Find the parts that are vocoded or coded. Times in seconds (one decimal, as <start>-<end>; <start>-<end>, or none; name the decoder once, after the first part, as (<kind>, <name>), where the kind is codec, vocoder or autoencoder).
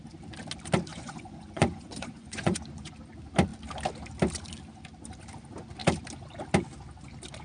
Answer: 0.9-2.9 (vocoder, Vocos)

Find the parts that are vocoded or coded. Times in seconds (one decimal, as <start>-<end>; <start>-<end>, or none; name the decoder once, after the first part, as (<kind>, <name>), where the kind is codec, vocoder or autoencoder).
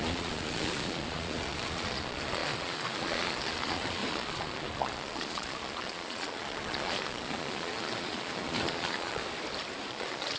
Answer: 0.0-9.2 (vocoder, Vocos); 9.9-10.4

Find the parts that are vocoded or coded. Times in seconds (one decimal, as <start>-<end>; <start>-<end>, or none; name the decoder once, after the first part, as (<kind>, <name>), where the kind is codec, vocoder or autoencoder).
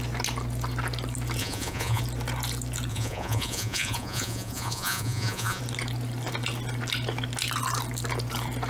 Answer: 1.4-2.0 (vocoder, Vocos); 2.9-5.6